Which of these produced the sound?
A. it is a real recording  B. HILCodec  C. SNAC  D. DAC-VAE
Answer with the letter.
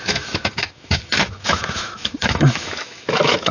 D